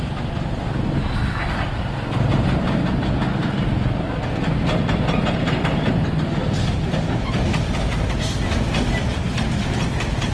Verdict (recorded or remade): recorded